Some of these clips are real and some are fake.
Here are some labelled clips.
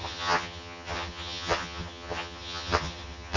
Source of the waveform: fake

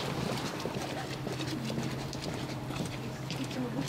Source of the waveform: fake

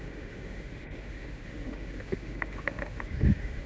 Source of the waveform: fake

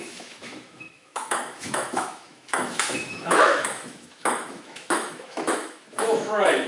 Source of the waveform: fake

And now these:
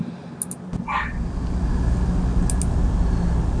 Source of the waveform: real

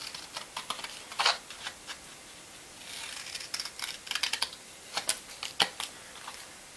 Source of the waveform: real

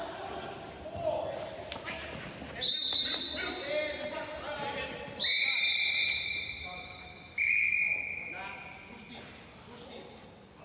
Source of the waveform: real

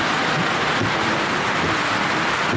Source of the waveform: real